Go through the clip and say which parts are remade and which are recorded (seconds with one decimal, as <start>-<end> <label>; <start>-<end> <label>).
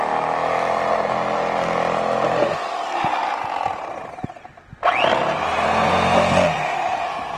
0.0-7.4 recorded